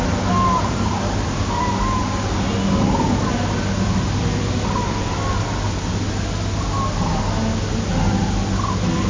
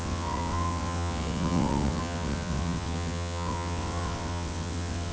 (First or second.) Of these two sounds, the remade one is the second